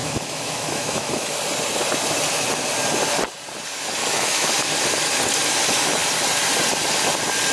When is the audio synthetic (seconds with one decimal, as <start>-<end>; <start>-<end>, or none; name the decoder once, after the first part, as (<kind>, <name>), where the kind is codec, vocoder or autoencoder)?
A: 0.0-1.4 (autoencoder, DAC-VAE); 4.0-4.6

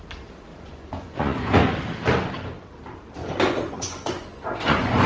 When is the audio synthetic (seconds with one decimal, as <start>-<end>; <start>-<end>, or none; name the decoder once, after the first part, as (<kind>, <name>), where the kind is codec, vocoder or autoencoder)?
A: 0.5-1.6 (vocoder, Vocos); 3.2-5.1

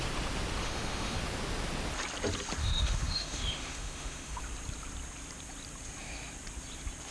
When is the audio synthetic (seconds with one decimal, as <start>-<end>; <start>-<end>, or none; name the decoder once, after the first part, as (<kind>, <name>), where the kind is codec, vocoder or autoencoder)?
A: 0.6-1.2 (autoencoder, DAC-VAE); 2.6-4.4

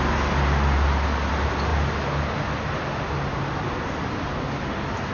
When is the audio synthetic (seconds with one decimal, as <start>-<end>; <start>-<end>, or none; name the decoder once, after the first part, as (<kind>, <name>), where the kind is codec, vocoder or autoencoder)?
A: none

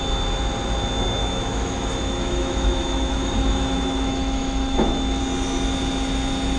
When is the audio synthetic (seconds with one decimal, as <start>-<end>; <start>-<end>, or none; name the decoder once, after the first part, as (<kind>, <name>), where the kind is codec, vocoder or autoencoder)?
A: 1.2-5.2 (autoencoder, DAC-VAE)

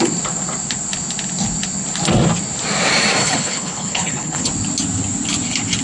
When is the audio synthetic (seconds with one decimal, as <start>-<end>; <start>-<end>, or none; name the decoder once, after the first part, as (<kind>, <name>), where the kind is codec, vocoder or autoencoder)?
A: 3.2-4.5 (codec, HILCodec)

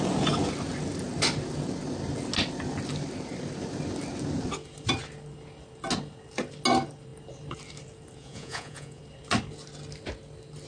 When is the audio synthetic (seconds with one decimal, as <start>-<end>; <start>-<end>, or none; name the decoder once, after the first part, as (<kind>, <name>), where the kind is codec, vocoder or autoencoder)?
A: 8.2-9.0 (vocoder, Vocos)